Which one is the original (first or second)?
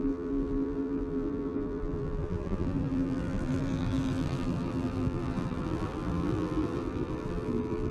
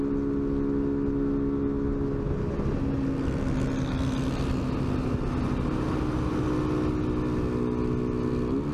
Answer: second